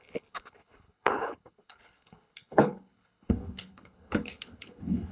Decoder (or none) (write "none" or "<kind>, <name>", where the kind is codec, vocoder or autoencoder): codec, HILCodec